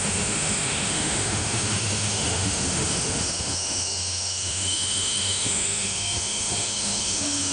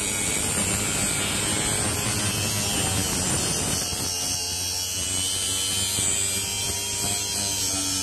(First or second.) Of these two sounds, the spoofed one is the first